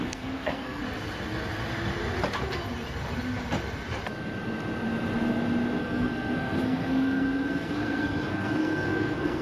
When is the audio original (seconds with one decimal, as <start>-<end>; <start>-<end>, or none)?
0.8-5.8